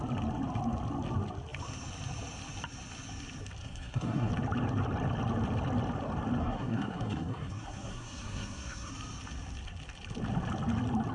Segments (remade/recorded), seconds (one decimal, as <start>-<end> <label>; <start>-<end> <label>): 0.0-3.6 recorded; 3.6-4.3 remade; 4.3-6.4 recorded; 6.4-8.9 remade; 8.9-11.1 recorded